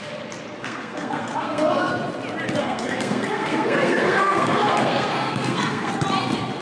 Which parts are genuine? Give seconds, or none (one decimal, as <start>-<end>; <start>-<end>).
0.0-0.6; 1.9-2.6; 5.9-6.6